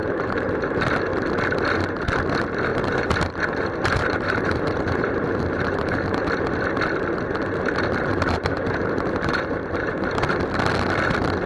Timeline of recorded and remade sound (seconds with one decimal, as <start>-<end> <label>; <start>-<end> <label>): 0.0-0.7 remade; 0.7-2.7 recorded; 2.7-6.3 remade; 6.3-8.1 recorded; 8.1-10.4 remade; 10.4-11.5 recorded